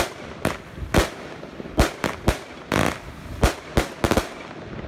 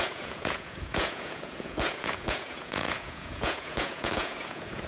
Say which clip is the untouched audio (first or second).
first